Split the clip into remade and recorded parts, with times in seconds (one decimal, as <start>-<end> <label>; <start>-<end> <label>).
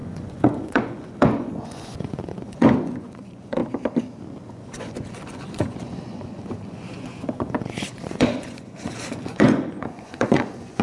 0.0-3.6 remade; 3.6-4.5 recorded; 4.5-10.8 remade